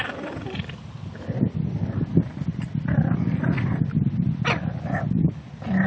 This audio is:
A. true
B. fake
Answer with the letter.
A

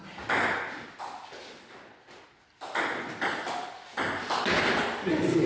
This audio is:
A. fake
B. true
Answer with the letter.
B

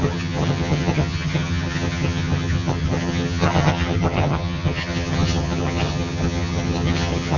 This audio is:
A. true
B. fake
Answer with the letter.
B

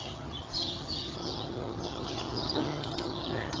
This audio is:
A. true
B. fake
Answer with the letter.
B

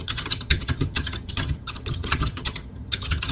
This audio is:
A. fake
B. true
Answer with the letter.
A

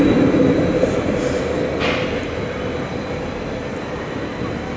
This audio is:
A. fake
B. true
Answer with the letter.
B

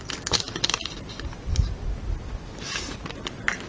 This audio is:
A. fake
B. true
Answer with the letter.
B